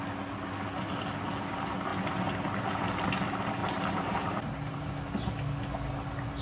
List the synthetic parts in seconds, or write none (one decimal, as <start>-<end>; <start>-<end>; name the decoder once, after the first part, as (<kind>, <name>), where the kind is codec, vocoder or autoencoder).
3.6-4.9 (vocoder, BigVGAN v2)